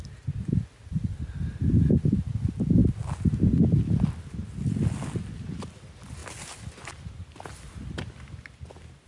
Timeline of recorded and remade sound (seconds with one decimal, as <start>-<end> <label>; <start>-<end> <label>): 0.0-9.1 recorded